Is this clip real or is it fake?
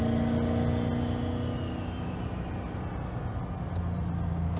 real